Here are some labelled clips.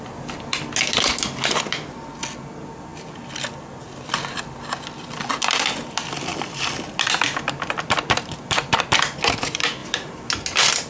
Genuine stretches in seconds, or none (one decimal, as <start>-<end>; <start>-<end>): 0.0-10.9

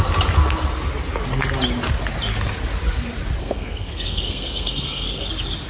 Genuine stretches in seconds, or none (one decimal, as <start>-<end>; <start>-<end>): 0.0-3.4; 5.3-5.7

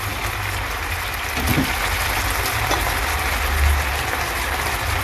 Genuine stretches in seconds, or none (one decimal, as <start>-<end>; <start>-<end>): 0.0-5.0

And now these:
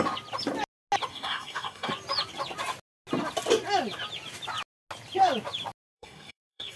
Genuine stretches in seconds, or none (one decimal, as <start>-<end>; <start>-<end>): 0.0-1.1; 1.9-5.9

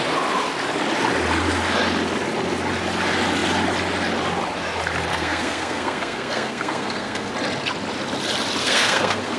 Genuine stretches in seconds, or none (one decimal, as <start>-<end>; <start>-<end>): 0.0-5.1; 7.3-8.6

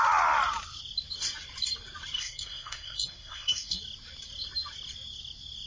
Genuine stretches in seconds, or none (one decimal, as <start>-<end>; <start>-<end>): 0.0-2.2; 3.8-5.7